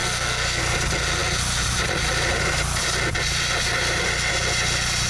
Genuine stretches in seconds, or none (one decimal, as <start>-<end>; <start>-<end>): 0.6-5.1